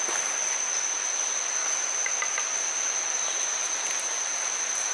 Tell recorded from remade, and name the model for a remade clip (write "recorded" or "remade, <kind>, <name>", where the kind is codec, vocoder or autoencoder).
recorded